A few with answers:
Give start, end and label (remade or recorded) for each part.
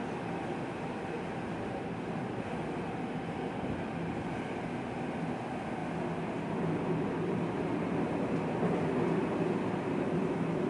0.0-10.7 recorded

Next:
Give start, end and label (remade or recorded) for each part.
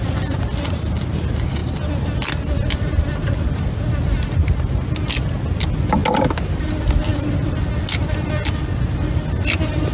0.0-9.9 recorded